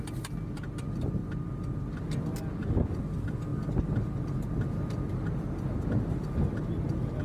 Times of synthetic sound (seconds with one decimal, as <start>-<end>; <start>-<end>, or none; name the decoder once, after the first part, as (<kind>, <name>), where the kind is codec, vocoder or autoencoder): none